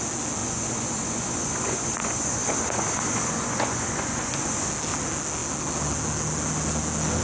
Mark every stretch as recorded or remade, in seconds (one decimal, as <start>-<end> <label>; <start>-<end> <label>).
0.0-0.4 recorded; 0.4-4.7 remade; 4.7-7.2 recorded